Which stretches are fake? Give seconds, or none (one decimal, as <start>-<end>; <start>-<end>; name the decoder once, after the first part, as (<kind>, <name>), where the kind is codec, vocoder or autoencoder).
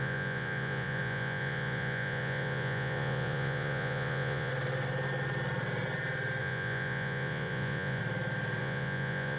0.0-4.5 (vocoder, Vocos); 6.4-8.0; 8.6-9.4